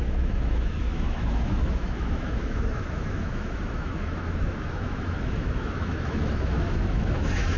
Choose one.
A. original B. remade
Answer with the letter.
B